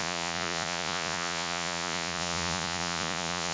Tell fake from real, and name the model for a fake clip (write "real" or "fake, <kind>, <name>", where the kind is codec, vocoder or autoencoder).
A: fake, vocoder, Vocos